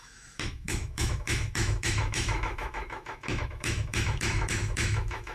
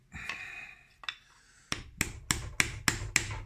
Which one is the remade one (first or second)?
first